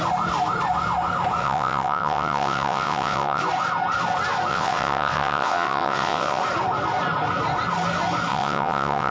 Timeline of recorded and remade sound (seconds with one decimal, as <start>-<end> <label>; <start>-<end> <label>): 0.0-1.4 recorded; 1.4-3.4 remade; 3.4-4.5 recorded; 4.5-6.4 remade; 6.4-8.3 recorded; 8.3-9.1 remade